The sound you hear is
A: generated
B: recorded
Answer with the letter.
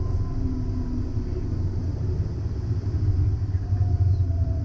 B